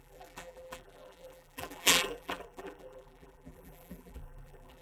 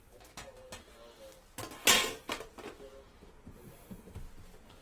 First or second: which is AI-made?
first